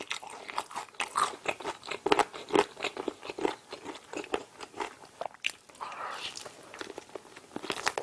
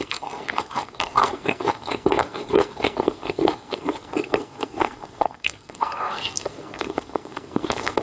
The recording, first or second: first